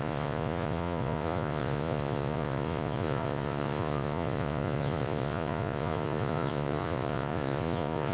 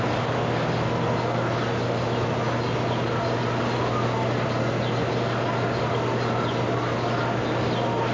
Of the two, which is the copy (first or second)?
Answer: first